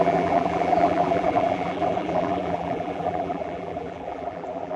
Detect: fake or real fake